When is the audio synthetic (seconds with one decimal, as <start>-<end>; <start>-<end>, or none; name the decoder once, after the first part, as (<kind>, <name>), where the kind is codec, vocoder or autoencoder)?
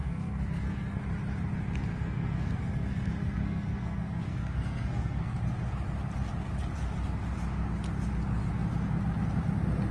0.0-1.0 (codec, SNAC); 1.9-5.4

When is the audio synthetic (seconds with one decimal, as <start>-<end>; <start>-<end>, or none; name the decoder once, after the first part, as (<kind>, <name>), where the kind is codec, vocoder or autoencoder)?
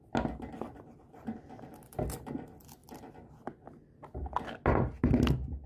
none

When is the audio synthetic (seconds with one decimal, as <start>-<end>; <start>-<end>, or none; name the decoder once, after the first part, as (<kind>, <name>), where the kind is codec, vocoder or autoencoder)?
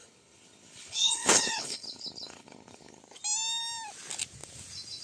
0.0-3.0 (codec, HILCodec)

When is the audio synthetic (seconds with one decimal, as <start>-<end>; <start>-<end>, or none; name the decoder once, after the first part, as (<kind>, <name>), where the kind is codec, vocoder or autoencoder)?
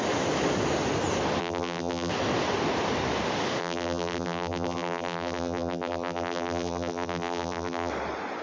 1.4-2.1 (vocoder, BigVGAN v2); 3.6-7.9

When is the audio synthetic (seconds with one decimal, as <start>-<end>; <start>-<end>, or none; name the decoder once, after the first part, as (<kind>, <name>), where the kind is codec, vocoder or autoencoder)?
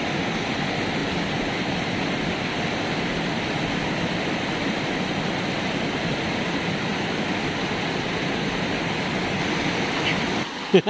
1.0-4.3 (vocoder, BigVGAN v2)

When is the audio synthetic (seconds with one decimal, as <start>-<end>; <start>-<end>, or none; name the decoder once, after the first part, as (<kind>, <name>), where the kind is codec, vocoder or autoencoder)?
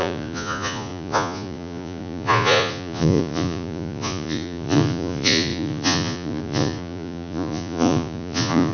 0.0-8.7 (vocoder, Vocos)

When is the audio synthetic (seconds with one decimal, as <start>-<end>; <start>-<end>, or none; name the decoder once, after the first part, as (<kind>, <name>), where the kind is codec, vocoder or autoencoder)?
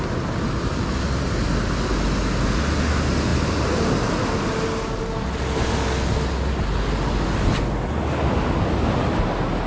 none